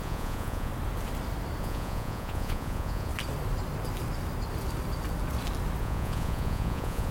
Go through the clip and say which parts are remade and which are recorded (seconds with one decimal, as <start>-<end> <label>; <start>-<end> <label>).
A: 0.0-0.7 remade; 0.7-1.6 recorded; 1.6-3.1 remade; 3.1-5.8 recorded; 5.8-7.1 remade